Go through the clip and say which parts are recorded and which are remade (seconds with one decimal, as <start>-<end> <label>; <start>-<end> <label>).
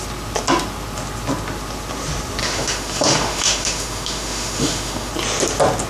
0.0-2.4 recorded; 2.4-5.1 remade; 5.1-5.9 recorded